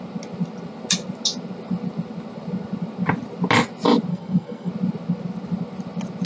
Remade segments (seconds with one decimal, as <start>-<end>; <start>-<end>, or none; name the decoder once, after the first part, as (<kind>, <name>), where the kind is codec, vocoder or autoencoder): 4.1-4.7 (codec, SNAC)